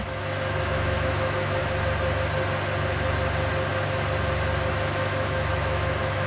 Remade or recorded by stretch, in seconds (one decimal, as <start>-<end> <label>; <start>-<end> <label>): 0.0-1.6 remade; 1.6-4.7 recorded; 4.7-6.3 remade